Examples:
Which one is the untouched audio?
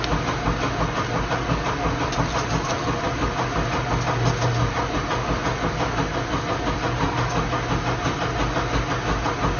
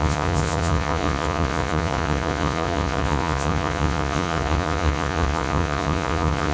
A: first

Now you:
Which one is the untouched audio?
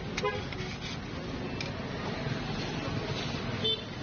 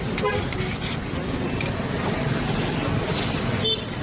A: first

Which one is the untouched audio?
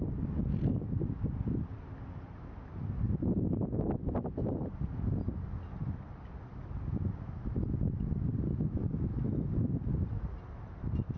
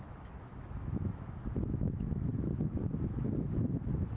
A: first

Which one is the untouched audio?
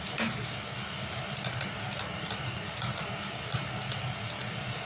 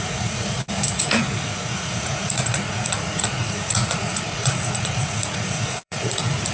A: first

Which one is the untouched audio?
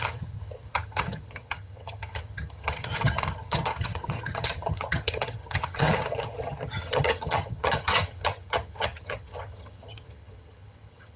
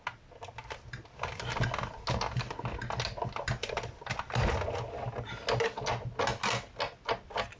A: second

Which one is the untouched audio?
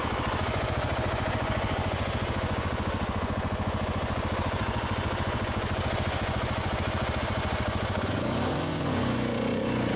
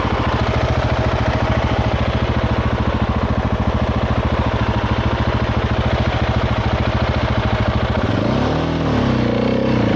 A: second